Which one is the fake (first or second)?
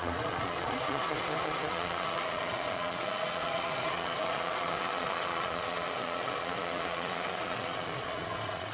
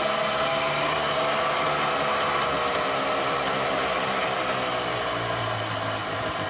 first